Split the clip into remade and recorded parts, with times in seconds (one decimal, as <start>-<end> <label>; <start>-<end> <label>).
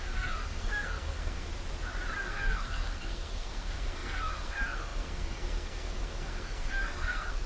0.0-1.5 remade; 1.5-2.2 recorded; 2.2-7.5 remade